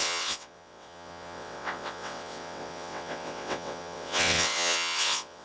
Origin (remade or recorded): remade